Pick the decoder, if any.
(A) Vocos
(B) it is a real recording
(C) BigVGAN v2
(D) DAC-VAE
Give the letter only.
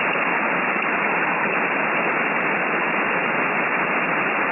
B